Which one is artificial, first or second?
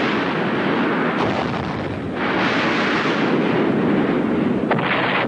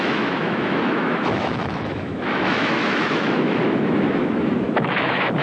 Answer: second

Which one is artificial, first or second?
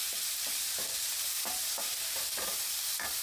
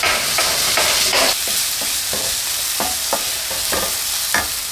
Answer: first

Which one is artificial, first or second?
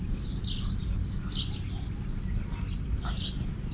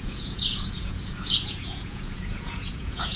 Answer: second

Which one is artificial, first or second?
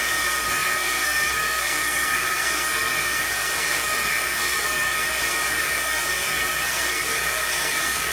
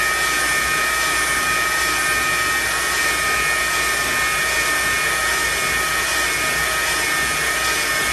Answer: first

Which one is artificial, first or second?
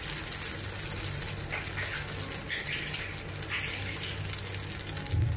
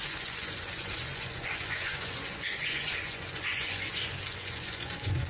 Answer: second